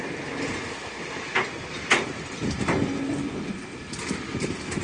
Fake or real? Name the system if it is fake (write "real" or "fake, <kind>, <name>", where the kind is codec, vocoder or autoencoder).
real